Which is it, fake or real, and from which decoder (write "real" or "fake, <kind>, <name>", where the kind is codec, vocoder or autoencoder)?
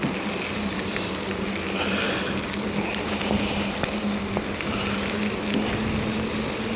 real